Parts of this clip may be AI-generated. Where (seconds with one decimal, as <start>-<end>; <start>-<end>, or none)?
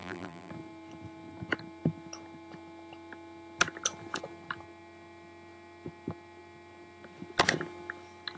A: 0.0-0.5